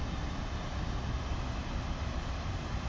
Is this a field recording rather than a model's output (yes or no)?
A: yes